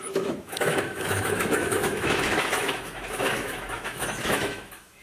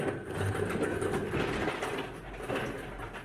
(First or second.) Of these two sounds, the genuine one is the second